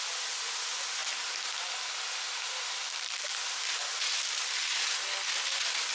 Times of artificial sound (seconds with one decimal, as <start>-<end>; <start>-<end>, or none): none